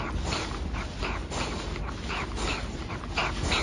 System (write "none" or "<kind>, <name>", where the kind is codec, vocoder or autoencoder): none